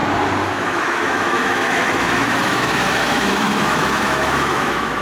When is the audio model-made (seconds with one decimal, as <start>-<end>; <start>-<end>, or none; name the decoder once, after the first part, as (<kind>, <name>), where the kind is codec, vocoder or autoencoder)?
0.6-5.0 (autoencoder, DAC-VAE)

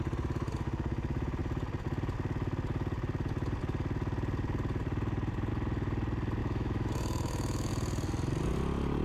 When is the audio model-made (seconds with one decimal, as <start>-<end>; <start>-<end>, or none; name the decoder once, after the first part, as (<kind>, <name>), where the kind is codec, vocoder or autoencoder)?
6.4-7.7 (autoencoder, DAC-VAE)

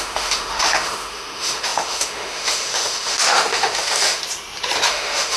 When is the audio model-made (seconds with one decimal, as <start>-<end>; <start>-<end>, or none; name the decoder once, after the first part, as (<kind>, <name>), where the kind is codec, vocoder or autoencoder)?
0.0-4.2 (autoencoder, DAC-VAE); 4.9-5.4

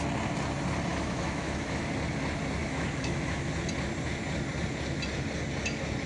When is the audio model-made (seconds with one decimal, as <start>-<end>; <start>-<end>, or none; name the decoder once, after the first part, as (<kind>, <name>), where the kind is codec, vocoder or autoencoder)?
0.9-1.8 (autoencoder, DAC-VAE); 2.6-3.5

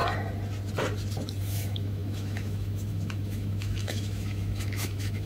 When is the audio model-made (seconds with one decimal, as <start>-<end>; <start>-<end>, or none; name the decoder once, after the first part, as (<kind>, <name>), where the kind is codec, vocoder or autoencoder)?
1.4-5.3 (autoencoder, DAC-VAE)